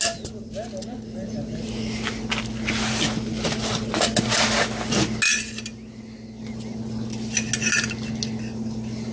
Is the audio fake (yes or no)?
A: no